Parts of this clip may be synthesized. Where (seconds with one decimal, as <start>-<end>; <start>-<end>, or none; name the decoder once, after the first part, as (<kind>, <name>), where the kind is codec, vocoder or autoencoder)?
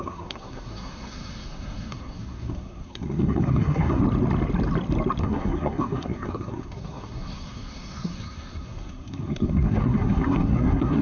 0.0-4.0 (codec, SNAC); 5.2-11.0